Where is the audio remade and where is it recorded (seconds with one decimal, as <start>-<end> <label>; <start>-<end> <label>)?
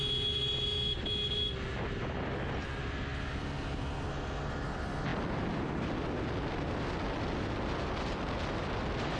0.0-9.2 recorded